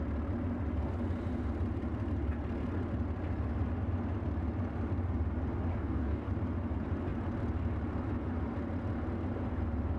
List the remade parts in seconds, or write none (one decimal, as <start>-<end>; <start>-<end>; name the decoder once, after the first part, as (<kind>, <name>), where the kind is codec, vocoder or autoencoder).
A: 5.7-6.3 (codec, DAC)